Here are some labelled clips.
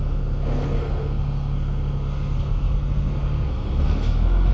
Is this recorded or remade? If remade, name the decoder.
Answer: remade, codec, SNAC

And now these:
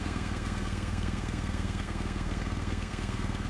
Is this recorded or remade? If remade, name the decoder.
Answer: remade, codec, SNAC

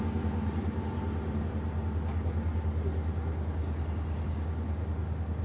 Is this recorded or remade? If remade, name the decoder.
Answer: recorded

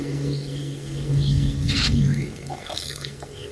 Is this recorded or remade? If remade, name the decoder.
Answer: remade, codec, SNAC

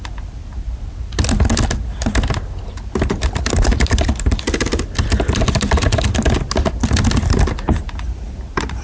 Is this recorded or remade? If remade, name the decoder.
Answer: recorded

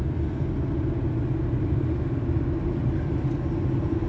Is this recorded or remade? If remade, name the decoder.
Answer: recorded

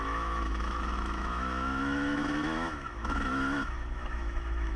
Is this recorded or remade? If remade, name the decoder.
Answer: remade, autoencoder, DAC-VAE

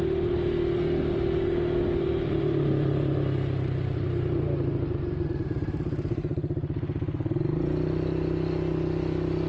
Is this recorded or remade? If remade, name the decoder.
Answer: recorded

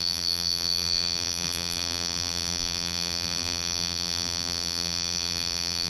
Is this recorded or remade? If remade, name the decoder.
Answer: remade, vocoder, BigVGAN v2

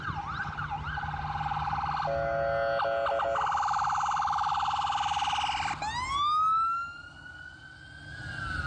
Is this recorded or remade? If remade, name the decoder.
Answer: recorded